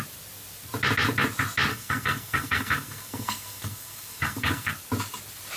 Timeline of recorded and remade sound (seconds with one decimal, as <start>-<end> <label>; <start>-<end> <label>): 0.0-1.7 recorded; 1.7-4.7 remade; 4.7-5.6 recorded